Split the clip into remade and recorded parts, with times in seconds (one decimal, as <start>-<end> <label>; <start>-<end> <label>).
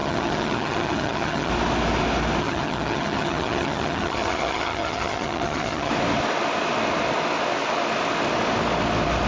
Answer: 0.0-1.5 remade; 1.5-2.4 recorded; 2.4-5.9 remade; 5.9-9.3 recorded